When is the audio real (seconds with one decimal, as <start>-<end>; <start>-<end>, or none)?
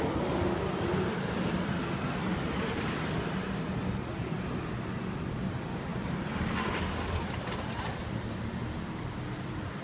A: 0.0-9.8